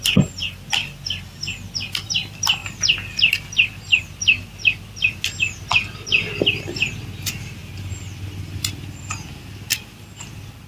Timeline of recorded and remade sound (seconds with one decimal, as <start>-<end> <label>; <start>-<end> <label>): 0.0-10.7 recorded